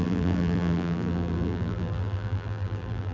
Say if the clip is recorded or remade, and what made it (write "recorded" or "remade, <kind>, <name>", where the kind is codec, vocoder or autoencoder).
remade, vocoder, BigVGAN v2